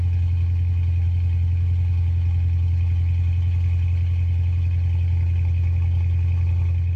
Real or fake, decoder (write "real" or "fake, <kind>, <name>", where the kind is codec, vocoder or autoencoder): real